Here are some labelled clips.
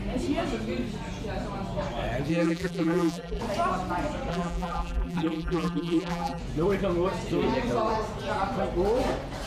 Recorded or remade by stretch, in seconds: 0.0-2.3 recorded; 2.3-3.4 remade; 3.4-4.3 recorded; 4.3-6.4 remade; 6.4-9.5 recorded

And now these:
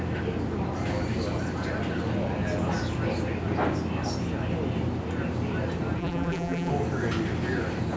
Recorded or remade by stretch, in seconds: 0.0-6.0 recorded; 6.0-6.7 remade; 6.7-8.0 recorded

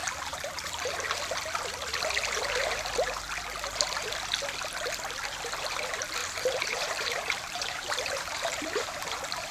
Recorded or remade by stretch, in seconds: 0.0-1.2 remade; 1.2-6.2 recorded; 6.2-9.5 remade

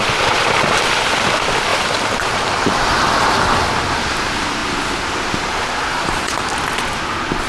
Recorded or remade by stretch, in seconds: 0.0-1.7 recorded; 1.7-3.0 remade; 3.0-5.9 recorded; 5.9-6.5 remade; 6.5-7.5 recorded